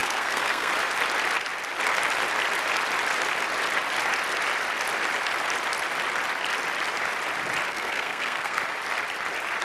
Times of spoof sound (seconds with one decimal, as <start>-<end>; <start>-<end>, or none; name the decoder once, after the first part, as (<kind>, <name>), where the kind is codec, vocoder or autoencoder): 0.0-0.7 (codec, SNAC); 7.7-8.6